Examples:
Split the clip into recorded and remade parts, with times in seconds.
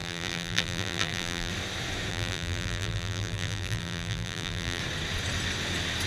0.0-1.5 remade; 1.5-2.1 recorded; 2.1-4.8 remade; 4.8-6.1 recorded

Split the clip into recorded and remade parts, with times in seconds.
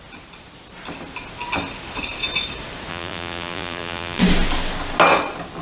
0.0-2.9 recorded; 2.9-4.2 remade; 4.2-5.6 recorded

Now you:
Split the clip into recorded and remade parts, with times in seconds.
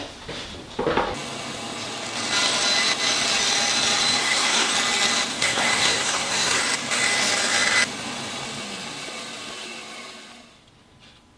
0.0-4.2 recorded; 4.2-4.7 remade; 4.7-5.3 recorded; 5.3-6.6 remade; 6.6-11.4 recorded